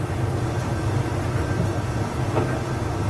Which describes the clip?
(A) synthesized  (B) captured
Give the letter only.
B